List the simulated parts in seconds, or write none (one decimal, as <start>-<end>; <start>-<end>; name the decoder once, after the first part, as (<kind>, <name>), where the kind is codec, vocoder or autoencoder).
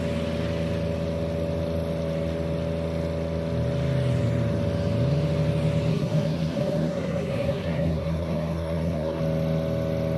5.9-9.2 (codec, SNAC)